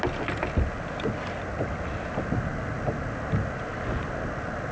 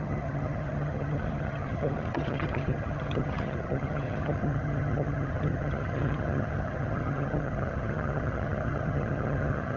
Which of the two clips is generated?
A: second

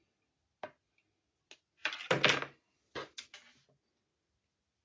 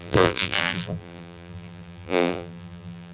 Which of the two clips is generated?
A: second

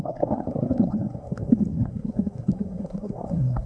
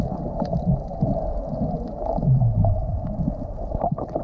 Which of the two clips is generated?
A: first